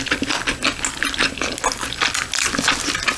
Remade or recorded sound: recorded